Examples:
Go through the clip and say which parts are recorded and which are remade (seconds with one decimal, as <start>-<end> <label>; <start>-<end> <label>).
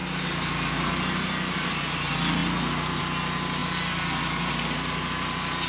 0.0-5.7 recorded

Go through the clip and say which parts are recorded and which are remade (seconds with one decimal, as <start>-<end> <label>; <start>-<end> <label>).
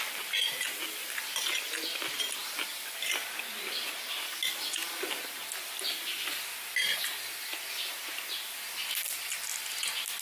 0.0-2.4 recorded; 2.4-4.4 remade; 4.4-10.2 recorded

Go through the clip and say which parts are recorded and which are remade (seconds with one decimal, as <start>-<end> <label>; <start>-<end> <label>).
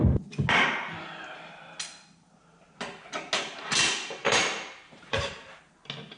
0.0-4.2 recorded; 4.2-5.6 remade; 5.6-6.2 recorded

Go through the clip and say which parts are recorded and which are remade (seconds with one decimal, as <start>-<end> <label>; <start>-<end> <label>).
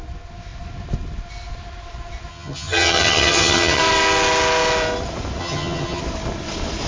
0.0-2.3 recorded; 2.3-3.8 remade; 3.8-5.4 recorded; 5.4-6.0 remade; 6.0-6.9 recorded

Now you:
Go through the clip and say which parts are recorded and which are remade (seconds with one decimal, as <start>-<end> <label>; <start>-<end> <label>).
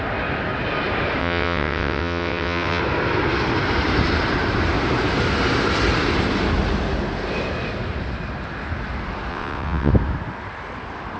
0.0-1.2 recorded; 1.2-2.8 remade; 2.8-9.3 recorded; 9.3-9.9 remade; 9.9-11.2 recorded